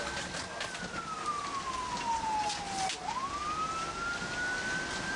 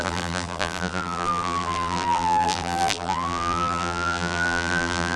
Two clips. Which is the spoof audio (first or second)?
second